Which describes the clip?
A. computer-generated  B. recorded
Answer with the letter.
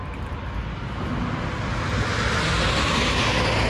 B